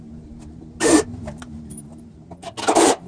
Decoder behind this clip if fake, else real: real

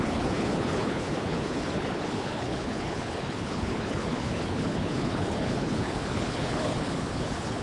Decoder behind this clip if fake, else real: fake, codec, HILCodec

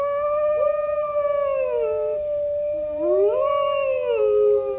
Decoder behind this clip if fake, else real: real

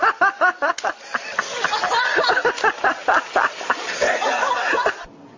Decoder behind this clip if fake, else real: real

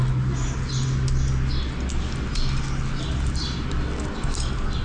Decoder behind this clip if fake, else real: real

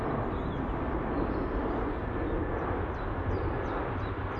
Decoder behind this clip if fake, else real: real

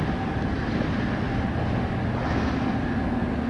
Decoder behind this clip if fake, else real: real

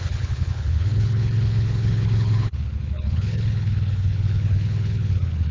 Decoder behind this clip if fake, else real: fake, codec, HILCodec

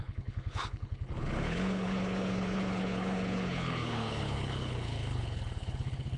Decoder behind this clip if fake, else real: fake, codec, HILCodec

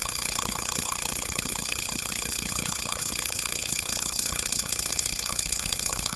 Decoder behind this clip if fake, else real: fake, codec, HILCodec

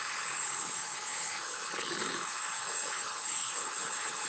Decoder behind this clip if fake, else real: fake, codec, HILCodec